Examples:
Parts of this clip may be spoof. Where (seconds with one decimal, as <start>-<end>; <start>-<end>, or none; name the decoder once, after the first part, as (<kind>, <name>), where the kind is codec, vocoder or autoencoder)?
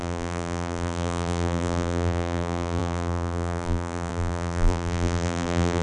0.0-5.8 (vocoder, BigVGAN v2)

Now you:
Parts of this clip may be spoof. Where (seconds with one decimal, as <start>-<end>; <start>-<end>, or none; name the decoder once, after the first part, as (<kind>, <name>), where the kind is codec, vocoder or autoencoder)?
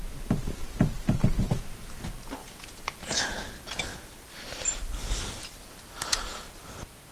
2.4-3.4 (vocoder, Vocos)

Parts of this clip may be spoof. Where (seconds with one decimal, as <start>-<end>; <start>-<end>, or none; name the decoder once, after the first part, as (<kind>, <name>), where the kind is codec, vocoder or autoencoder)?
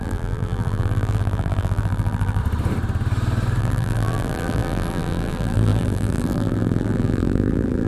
0.0-2.4 (vocoder, BigVGAN v2); 3.6-7.9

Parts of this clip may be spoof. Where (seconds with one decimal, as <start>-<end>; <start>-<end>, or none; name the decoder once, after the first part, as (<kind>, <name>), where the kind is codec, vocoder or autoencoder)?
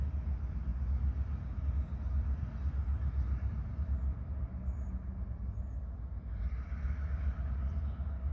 none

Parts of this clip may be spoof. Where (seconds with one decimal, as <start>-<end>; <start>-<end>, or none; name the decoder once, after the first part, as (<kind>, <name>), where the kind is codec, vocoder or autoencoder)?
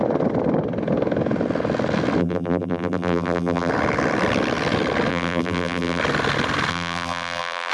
2.2-3.7 (vocoder, BigVGAN v2); 5.1-6.0; 6.7-7.7